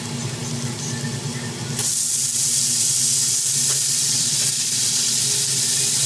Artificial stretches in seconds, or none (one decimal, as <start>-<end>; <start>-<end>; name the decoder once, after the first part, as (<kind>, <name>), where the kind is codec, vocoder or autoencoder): 4.0-5.2 (vocoder, Vocos)